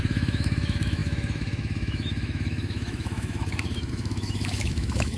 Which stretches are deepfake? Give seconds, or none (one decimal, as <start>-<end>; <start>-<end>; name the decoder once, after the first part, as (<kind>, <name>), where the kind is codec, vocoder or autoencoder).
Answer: 0.0-5.2 (autoencoder, DAC-VAE)